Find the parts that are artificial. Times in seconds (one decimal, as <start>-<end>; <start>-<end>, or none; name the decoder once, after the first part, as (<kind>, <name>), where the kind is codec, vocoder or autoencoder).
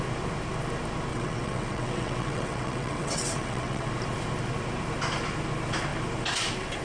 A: 1.1-3.9 (vocoder, WaveNeXt)